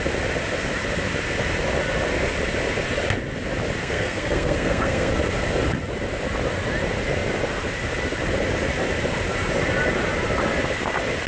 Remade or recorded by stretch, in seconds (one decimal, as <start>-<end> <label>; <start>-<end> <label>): 0.0-3.8 recorded; 3.8-5.1 remade; 5.1-11.3 recorded